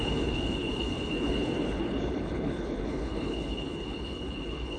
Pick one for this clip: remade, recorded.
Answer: remade